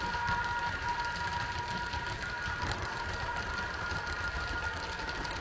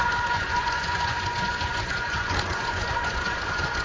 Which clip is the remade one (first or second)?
second